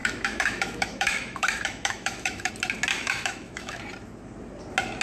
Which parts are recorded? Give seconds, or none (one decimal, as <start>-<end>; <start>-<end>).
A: 2.5-2.9; 3.8-5.0